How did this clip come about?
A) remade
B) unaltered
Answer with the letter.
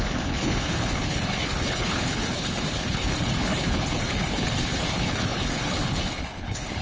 A